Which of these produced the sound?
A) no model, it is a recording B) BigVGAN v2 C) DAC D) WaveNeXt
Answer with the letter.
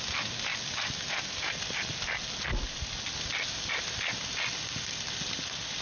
A